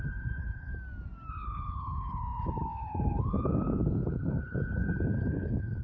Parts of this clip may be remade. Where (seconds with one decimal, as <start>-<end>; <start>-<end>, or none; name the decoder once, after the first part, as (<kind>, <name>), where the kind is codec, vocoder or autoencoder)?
0.0-0.7 (codec, HILCodec); 1.3-5.8